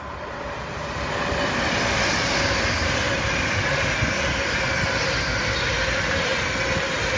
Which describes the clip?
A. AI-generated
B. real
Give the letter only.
B